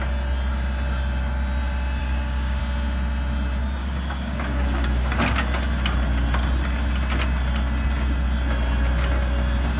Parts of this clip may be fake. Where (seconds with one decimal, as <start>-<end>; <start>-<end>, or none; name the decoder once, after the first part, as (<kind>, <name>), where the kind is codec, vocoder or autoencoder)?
2.0-2.6 (codec, DAC); 3.8-5.2

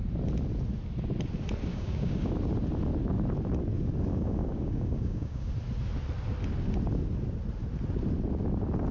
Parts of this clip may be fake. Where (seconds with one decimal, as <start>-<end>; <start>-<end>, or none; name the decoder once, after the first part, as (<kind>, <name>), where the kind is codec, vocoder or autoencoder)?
1.7-2.3 (codec, DAC); 4.1-5.5

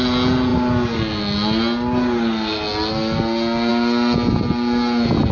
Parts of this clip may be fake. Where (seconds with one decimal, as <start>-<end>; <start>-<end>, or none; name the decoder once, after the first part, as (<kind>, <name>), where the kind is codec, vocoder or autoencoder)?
none